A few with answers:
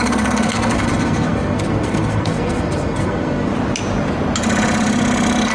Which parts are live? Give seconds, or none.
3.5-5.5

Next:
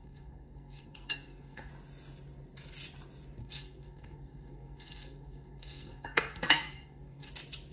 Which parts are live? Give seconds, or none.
1.7-3.4; 7.3-7.7

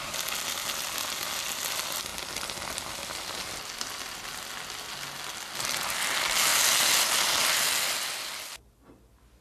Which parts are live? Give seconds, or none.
0.0-9.4

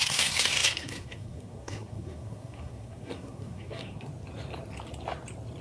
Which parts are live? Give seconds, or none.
4.1-5.6

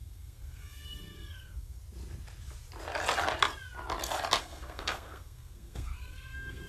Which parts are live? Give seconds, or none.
1.8-4.4